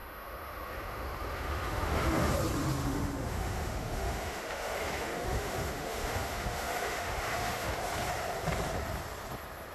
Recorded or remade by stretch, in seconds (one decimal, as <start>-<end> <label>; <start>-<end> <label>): 0.0-2.3 remade; 2.3-2.8 recorded; 2.8-7.8 remade; 7.8-9.7 recorded